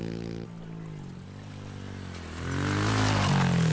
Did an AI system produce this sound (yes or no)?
no